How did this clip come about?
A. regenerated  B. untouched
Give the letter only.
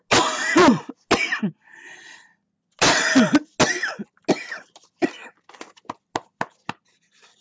B